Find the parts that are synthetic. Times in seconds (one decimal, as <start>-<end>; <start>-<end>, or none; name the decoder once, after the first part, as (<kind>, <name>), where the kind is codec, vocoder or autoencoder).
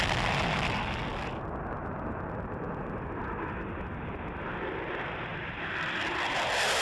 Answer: 5.3-5.9 (vocoder, BigVGAN v2)